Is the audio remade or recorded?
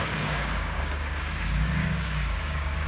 remade